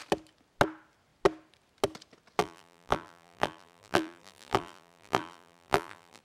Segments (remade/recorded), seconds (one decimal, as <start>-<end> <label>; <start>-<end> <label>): 0.0-2.4 recorded; 2.4-6.2 remade